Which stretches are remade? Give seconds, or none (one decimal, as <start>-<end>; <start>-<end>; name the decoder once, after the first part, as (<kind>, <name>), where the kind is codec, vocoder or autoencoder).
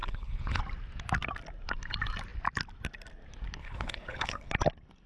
0.0-0.6 (codec, HILCodec); 3.6-4.5